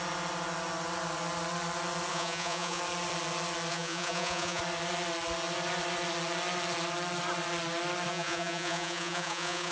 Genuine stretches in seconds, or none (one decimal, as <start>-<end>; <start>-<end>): 0.0-2.1; 2.8-3.7; 4.6-8.1